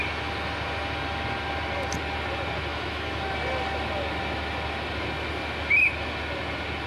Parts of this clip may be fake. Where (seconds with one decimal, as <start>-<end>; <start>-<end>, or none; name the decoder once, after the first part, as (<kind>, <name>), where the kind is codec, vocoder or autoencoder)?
2.7-3.2 (autoencoder, DAC-VAE)